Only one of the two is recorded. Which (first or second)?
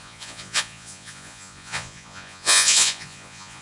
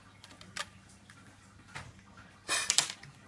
second